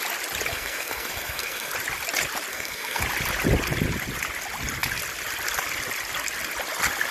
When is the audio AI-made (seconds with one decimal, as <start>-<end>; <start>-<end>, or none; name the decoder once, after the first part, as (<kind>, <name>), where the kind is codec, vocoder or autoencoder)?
0.5-1.7 (codec, SNAC); 2.5-3.0